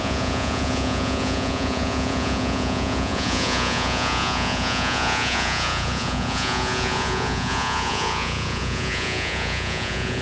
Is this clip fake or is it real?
fake